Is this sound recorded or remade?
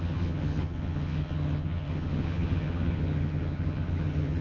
remade